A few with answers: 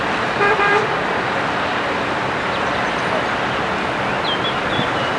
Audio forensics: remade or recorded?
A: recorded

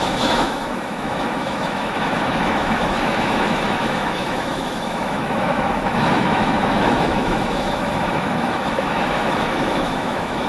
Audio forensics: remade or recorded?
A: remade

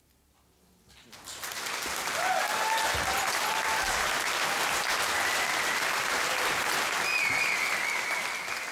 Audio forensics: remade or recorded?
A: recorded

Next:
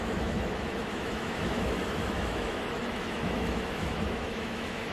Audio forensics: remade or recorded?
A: remade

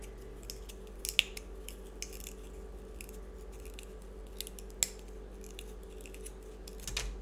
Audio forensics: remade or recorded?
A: recorded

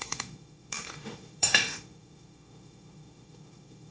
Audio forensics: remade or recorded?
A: remade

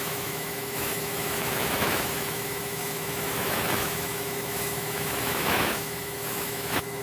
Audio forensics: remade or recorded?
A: remade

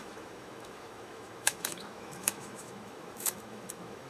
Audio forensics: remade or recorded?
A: remade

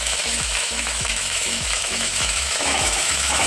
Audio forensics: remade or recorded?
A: remade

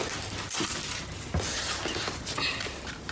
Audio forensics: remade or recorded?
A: recorded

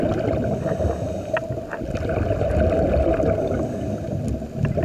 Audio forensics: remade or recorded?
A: recorded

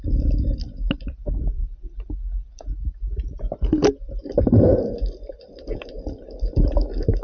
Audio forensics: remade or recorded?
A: recorded